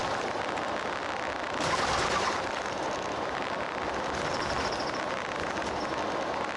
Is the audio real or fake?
real